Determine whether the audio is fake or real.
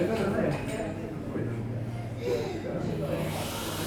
real